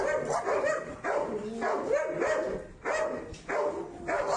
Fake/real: real